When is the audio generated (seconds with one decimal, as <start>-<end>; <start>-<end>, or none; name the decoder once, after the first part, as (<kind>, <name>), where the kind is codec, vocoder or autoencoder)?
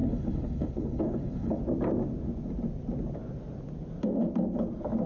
0.0-1.6 (codec, HILCodec)